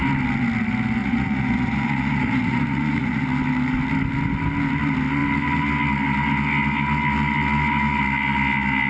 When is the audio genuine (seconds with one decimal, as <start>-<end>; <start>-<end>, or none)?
0.0-1.0; 3.2-8.9